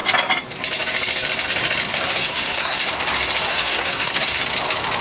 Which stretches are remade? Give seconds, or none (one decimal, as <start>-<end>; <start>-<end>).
1.9-2.9; 3.5-4.4